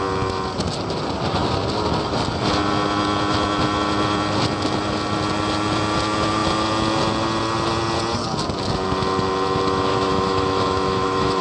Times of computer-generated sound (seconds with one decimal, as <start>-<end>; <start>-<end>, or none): 9.9-11.4